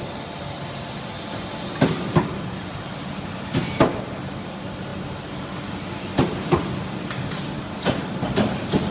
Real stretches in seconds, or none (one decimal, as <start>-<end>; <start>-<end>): 0.0-8.9